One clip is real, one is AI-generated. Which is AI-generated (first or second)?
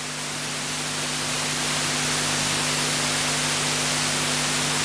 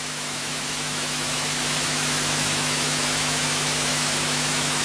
second